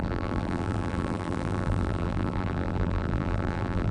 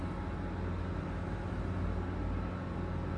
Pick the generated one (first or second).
first